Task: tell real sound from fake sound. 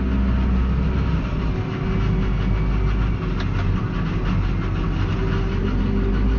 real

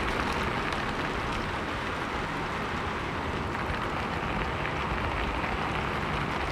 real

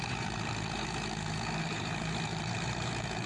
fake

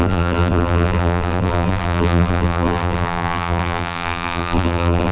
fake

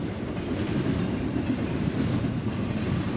fake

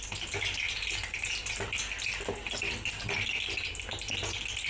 real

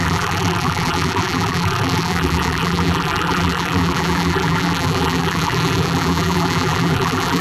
fake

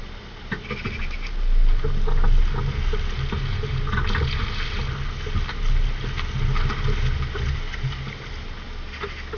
real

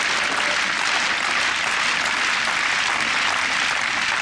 real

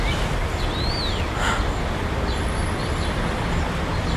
real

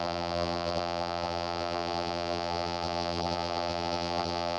fake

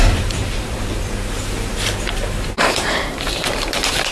fake